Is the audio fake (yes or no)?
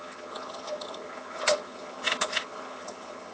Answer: yes